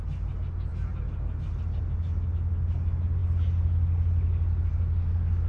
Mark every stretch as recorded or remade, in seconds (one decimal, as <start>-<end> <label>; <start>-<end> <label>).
0.0-5.5 recorded